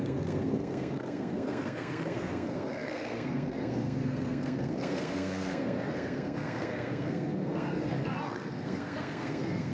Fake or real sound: fake